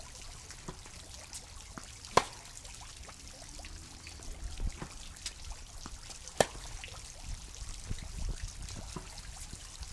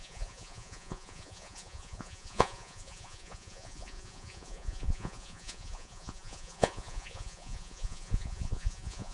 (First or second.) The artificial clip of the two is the second